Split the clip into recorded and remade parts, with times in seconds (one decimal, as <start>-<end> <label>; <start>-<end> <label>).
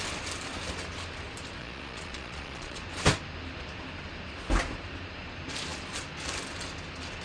0.0-1.6 recorded; 1.6-2.8 remade; 2.8-7.2 recorded